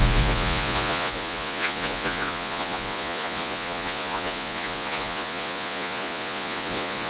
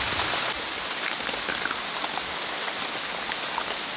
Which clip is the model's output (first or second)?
first